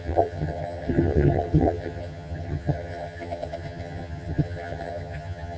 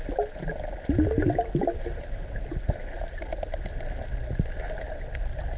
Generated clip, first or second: first